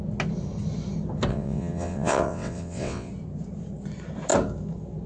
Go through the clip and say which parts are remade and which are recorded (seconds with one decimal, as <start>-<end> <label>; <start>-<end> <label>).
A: 0.0-1.3 recorded; 1.3-3.1 remade; 3.1-5.1 recorded